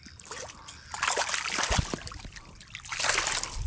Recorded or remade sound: recorded